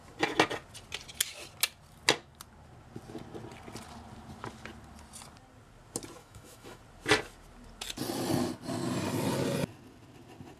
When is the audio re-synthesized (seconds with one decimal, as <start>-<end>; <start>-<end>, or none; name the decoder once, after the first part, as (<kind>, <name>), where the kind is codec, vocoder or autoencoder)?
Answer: 6.2-6.8 (autoencoder, DAC-VAE)